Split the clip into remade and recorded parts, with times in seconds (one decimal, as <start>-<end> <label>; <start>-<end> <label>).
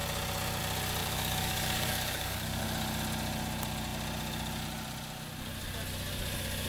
0.0-1.0 recorded; 1.0-2.6 remade; 2.6-6.7 recorded